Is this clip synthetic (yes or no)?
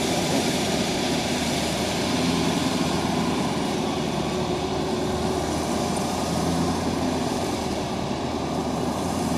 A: yes